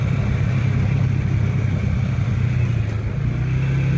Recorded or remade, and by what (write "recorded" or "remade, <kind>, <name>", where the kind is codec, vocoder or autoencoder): recorded